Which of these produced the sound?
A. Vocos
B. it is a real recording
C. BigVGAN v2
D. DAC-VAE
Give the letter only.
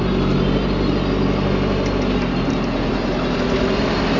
B